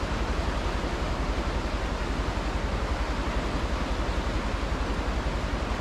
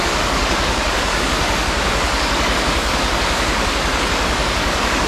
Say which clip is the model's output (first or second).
second